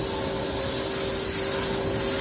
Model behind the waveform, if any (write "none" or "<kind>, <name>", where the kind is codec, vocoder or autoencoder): none